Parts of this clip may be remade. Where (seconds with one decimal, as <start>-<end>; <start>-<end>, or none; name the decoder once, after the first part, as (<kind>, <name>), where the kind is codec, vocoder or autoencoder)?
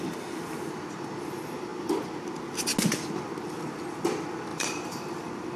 4.5-5.6 (vocoder, BigVGAN v2)